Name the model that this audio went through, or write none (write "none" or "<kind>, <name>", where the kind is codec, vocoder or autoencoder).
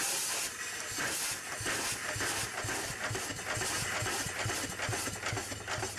none